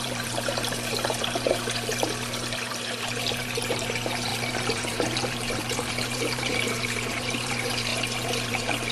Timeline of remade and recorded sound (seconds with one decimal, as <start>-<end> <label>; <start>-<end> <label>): 0.0-1.9 remade; 1.9-2.7 recorded; 2.7-7.9 remade; 7.9-8.5 recorded; 8.5-8.9 remade